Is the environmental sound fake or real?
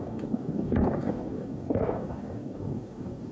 fake